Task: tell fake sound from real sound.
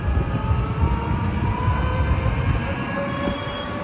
real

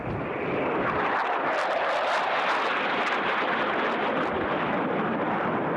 real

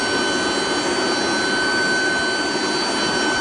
real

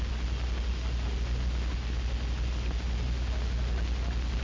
real